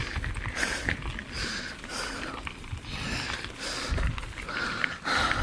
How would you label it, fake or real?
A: real